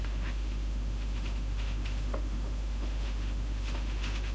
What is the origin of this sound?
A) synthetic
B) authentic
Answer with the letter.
A